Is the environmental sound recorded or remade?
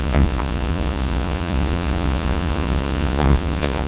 remade